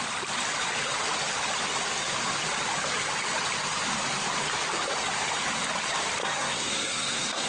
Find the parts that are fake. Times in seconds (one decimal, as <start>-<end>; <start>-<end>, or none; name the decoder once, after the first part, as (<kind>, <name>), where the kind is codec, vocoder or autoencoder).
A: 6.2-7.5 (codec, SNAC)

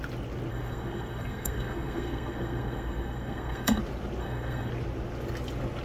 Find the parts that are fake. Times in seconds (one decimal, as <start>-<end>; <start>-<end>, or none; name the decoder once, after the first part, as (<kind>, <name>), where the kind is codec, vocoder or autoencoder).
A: 0.5-3.8 (codec, SNAC); 4.2-4.7

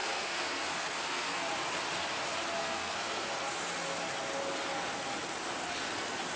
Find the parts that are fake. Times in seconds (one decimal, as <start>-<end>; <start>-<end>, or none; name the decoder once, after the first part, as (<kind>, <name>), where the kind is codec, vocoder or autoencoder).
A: 0.0-1.4 (codec, SNAC); 2.6-3.3

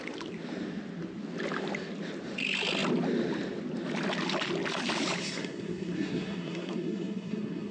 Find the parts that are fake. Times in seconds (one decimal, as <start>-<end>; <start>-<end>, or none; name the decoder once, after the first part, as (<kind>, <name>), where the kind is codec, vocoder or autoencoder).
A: 5.2-7.7 (codec, SNAC)

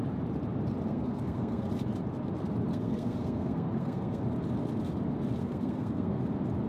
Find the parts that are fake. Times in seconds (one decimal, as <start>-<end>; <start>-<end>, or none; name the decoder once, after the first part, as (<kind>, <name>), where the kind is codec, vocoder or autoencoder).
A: 0.9-1.7 (codec, SNAC); 2.7-4.2; 5.4-6.2

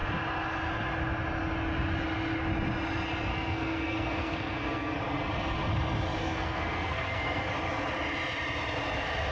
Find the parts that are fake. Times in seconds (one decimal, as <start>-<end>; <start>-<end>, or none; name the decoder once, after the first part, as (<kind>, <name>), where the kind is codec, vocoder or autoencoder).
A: 3.3-5.0 (codec, SNAC); 6.2-7.5

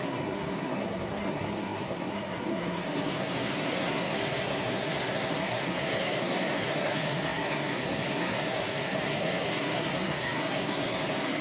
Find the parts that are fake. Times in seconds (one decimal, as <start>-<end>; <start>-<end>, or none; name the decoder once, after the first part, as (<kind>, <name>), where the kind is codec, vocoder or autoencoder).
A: 0.0-11.4 (codec, SNAC)

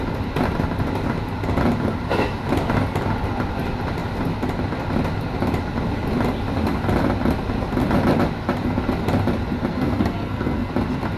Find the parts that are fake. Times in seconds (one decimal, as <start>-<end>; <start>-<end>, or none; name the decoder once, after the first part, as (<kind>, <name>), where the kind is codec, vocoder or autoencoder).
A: 9.7-10.7 (codec, SNAC)